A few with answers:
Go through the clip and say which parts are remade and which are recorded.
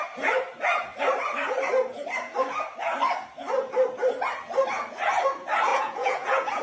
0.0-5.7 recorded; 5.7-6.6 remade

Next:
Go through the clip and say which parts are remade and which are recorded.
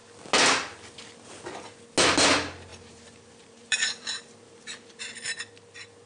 0.0-2.7 recorded; 2.7-5.0 remade; 5.0-6.1 recorded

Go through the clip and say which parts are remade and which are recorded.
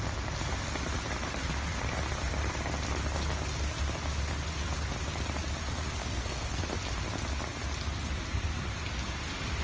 0.0-6.0 recorded; 6.0-6.6 remade; 6.6-9.6 recorded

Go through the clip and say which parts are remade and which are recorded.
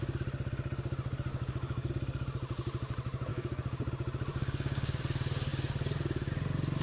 0.0-1.3 recorded; 1.3-1.9 remade; 1.9-3.3 recorded; 3.3-3.9 remade; 3.9-4.3 recorded; 4.3-5.0 remade; 5.0-6.8 recorded